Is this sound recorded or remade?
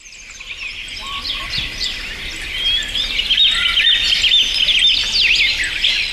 recorded